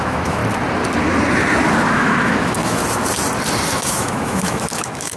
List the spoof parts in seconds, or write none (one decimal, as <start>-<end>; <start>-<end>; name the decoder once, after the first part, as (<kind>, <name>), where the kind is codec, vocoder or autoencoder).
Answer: 0.0-0.4 (autoencoder, DAC-VAE); 1.9-2.8; 3.7-5.2